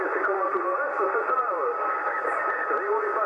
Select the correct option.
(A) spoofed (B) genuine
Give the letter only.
B